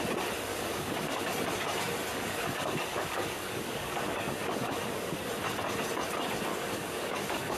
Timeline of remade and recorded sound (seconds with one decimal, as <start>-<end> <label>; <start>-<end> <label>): 0.0-0.5 recorded; 0.5-1.2 remade; 1.2-2.1 recorded; 2.1-5.2 remade; 5.2-6.5 recorded; 6.5-7.6 remade